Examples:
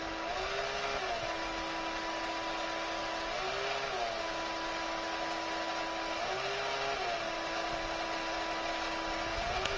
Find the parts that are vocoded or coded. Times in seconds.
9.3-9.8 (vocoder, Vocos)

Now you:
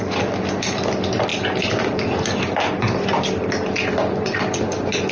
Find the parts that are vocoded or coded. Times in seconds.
none

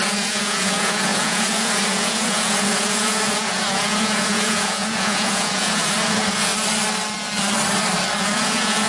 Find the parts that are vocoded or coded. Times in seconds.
0.0-6.5 (vocoder, Vocos); 8.2-8.9

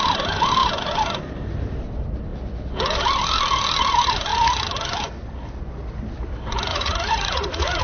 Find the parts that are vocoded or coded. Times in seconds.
6.7-7.8 (vocoder, Vocos)

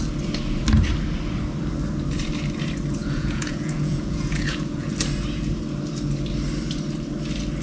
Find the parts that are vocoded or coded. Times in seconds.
3.0-4.9 (vocoder, Vocos)